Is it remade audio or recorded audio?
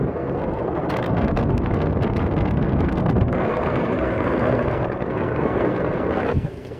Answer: remade